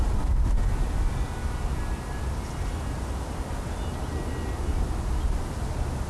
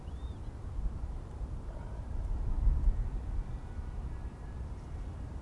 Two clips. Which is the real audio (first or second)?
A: first